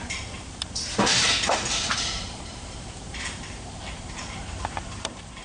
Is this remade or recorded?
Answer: remade